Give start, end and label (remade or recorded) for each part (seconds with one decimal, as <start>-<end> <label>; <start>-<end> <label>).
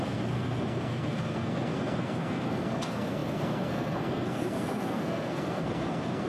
0.0-6.3 remade